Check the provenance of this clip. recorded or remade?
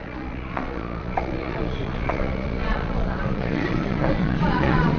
remade